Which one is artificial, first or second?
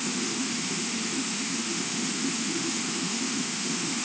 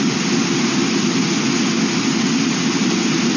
first